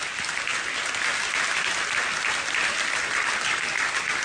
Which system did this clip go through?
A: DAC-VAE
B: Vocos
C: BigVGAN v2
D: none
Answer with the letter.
D